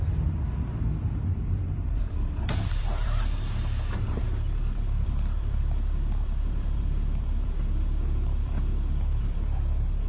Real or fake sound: fake